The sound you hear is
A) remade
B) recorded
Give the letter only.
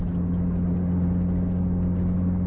B